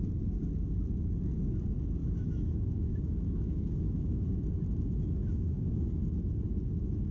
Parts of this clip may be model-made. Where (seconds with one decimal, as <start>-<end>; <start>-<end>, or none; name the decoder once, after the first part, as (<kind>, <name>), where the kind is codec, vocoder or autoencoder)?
2.0-4.3 (autoencoder, DAC-VAE); 5.2-6.0